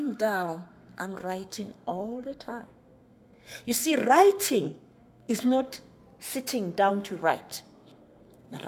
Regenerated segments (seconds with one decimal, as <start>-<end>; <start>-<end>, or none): 0.0-6.0; 6.9-8.7